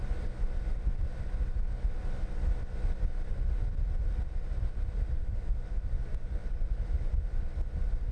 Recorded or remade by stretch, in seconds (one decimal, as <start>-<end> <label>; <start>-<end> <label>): 0.0-8.1 recorded